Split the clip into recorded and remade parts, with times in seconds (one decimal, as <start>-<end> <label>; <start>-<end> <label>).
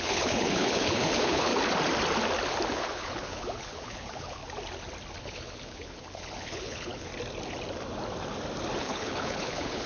0.0-1.5 remade; 1.5-2.7 recorded; 2.7-4.4 remade; 4.4-5.2 recorded; 5.2-7.1 remade; 7.1-8.8 recorded; 8.8-9.9 remade